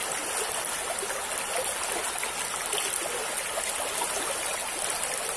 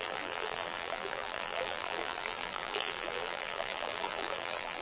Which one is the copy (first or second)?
second